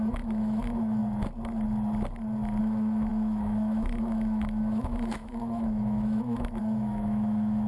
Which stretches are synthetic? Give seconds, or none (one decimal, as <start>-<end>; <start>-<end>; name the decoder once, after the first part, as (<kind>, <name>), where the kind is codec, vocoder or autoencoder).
0.0-1.0 (autoencoder, DAC-VAE); 2.6-7.7